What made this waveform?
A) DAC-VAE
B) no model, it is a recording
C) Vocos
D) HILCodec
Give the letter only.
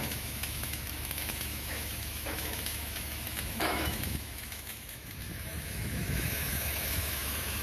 A